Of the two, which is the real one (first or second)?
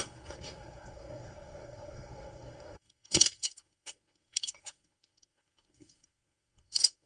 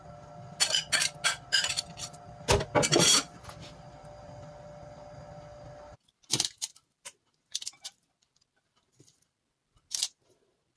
second